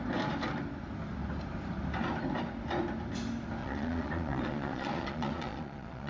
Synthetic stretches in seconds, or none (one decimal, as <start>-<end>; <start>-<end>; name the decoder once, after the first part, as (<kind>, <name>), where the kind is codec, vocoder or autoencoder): 3.6-6.1 (vocoder, Vocos)